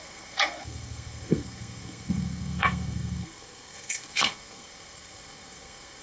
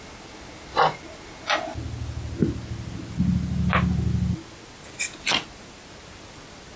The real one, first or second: second